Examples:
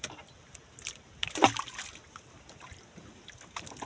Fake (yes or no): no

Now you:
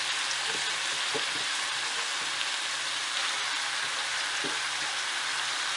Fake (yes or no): no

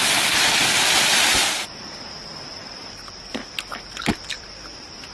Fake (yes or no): yes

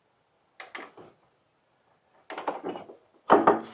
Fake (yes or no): no